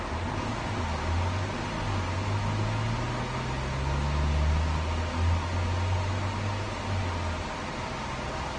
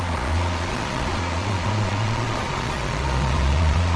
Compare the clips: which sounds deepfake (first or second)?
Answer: second